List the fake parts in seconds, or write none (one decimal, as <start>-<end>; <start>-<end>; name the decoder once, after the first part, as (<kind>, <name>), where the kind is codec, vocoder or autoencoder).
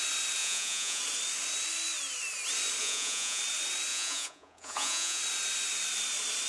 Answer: 0.4-1.0 (vocoder, Vocos); 2.8-3.4; 3.9-5.2